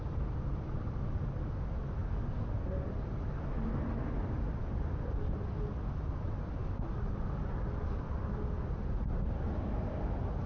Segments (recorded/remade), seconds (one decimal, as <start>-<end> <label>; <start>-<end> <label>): 0.0-10.5 recorded

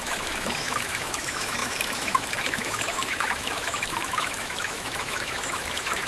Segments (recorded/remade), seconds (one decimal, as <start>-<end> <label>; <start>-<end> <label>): 0.0-6.1 remade